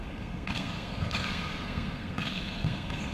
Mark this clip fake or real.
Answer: fake